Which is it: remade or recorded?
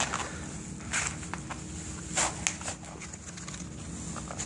recorded